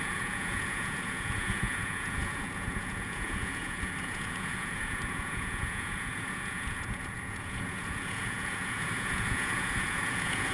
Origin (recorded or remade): remade